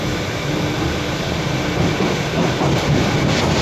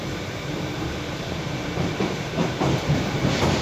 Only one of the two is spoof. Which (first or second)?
second